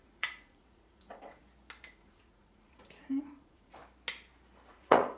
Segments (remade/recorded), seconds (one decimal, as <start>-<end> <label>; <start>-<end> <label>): 0.0-1.4 remade; 1.4-1.9 recorded; 1.9-3.8 remade; 3.8-4.7 recorded; 4.7-5.2 remade